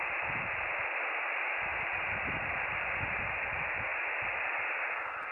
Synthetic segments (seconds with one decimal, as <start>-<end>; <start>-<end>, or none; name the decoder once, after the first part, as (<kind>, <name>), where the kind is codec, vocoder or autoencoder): 1.7-3.2 (vocoder, BigVGAN v2)